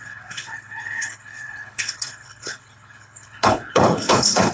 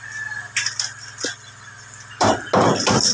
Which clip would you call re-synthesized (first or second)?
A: first